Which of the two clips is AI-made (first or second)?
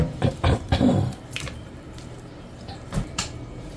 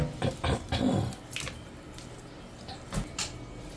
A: first